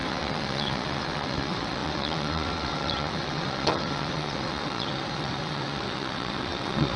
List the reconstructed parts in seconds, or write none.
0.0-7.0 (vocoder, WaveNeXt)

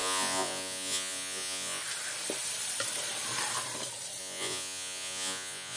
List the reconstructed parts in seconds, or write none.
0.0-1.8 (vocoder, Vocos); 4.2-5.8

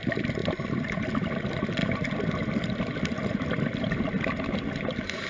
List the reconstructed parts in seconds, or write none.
none

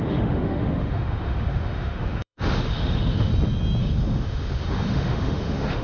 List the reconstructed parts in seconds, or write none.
0.0-3.3 (autoencoder, DAC-VAE); 3.8-5.8

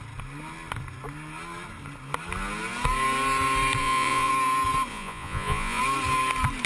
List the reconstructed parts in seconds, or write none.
3.8-4.3 (vocoder, Vocos); 4.9-5.8

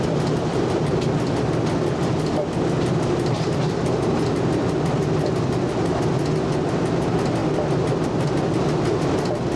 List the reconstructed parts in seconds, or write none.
none

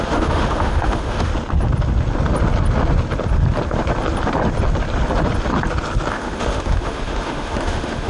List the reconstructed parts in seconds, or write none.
0.0-1.3 (autoencoder, DAC-VAE); 6.1-8.1